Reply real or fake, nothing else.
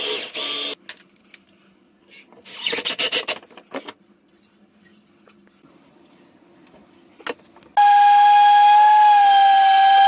real